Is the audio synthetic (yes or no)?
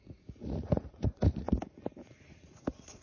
yes